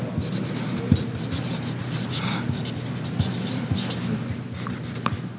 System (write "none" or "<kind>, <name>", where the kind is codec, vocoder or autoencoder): none